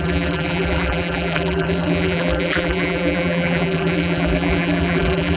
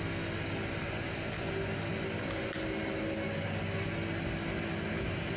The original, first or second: second